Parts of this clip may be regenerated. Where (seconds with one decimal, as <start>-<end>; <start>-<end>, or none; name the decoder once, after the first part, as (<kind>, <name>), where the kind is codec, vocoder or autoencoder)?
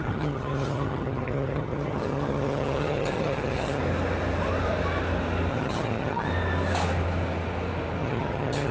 0.0-3.8 (vocoder, HiFi-GAN); 5.5-6.3; 8.0-8.7